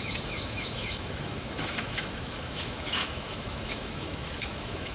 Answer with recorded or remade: remade